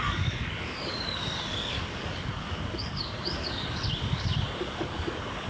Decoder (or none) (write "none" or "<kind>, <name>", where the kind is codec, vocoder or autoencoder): codec, DAC